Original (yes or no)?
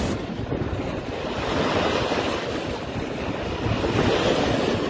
yes